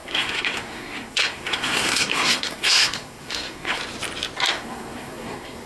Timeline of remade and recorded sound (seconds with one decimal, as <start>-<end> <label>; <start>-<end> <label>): 0.0-3.8 remade; 3.8-4.5 recorded; 4.5-5.7 remade